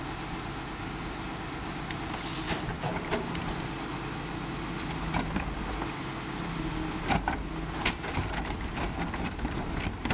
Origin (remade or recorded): recorded